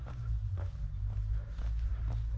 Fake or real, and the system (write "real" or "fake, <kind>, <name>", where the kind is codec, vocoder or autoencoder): real